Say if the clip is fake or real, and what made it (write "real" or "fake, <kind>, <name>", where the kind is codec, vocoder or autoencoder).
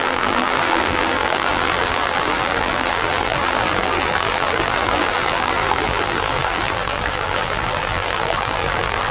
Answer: fake, vocoder, BigVGAN v2